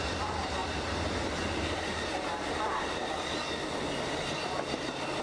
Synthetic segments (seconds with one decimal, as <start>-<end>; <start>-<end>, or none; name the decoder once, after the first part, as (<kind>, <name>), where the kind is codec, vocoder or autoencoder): 0.0-3.0 (vocoder, BigVGAN v2)